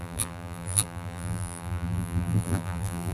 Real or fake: fake